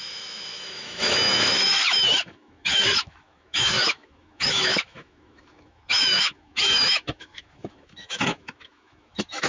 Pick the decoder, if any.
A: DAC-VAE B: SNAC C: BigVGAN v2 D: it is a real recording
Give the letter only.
A